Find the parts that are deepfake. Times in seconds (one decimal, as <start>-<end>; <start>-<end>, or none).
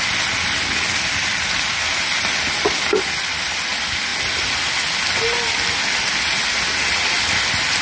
none